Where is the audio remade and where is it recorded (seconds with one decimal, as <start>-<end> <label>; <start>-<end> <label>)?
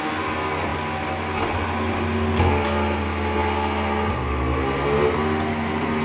0.0-6.0 recorded